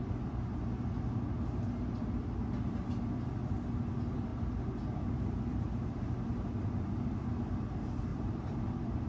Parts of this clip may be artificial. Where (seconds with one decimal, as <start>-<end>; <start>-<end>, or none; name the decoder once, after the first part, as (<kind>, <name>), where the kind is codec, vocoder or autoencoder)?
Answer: 4.3-6.1 (vocoder, BigVGAN v2); 8.1-8.6